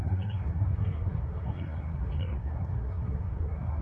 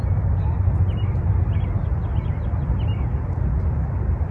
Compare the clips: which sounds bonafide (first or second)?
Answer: second